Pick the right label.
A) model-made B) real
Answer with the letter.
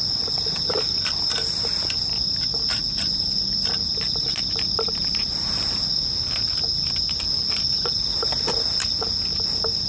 B